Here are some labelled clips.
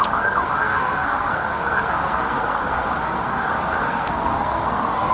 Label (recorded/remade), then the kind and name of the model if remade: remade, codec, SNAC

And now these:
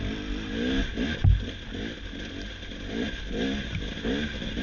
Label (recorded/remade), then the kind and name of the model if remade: recorded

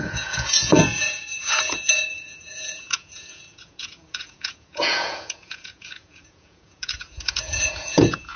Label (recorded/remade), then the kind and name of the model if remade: remade, vocoder, Vocos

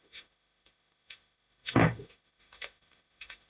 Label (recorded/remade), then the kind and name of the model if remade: remade, autoencoder, DAC-VAE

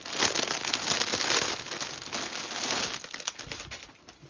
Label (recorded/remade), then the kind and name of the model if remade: recorded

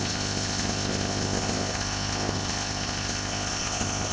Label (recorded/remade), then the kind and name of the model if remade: remade, codec, ZipCodec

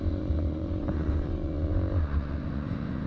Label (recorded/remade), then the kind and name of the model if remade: remade, vocoder, Vocos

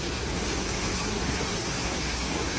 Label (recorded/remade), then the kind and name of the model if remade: remade, codec, SNAC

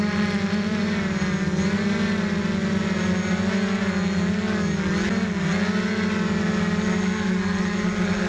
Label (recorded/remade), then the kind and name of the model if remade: recorded